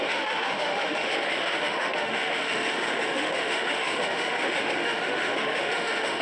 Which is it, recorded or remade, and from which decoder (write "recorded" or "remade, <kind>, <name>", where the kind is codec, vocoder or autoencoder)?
remade, autoencoder, DAC-VAE